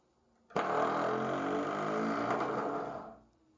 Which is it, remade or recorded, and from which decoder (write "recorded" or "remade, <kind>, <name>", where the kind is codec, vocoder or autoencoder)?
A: recorded